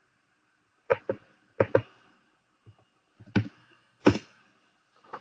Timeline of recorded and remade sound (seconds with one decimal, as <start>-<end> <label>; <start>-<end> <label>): 0.0-3.6 recorded; 3.6-4.4 remade; 4.4-5.2 recorded